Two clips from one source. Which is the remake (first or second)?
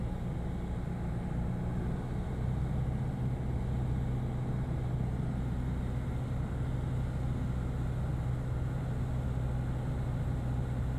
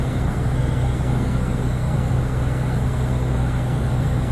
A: second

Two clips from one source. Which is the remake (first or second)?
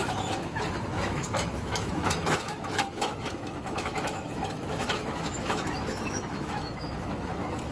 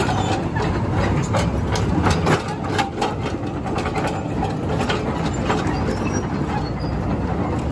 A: first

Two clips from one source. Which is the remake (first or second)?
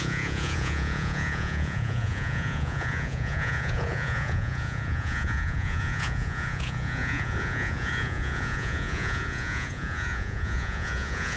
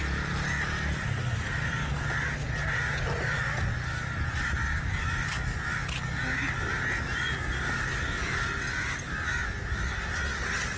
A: first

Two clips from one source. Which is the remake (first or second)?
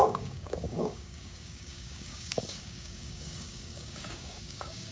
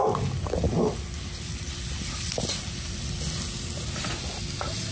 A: first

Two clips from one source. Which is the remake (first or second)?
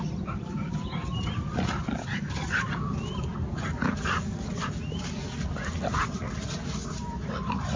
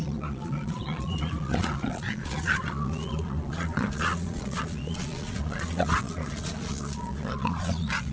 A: second